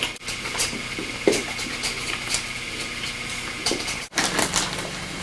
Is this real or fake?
fake